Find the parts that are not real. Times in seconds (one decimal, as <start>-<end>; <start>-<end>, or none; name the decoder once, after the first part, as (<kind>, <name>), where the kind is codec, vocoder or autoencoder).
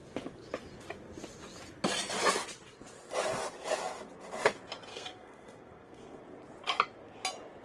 4.9-6.2 (codec, SNAC)